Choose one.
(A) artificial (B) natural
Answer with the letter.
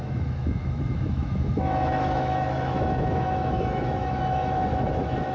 A